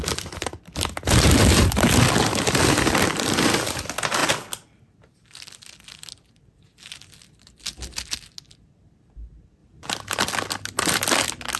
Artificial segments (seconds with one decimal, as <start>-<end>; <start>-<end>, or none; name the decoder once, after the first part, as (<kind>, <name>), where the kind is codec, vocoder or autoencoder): 9.6-10.2 (vocoder, BigVGAN v2)